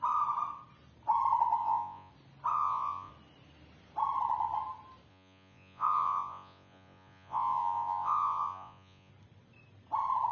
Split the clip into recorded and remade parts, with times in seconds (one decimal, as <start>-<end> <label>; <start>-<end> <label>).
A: 0.0-1.6 recorded; 1.6-2.1 remade; 2.1-2.5 recorded; 2.5-3.1 remade; 3.1-5.1 recorded; 5.1-9.1 remade; 9.1-10.3 recorded